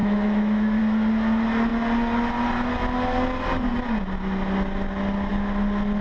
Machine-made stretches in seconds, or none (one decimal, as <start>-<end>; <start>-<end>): 0.0-0.8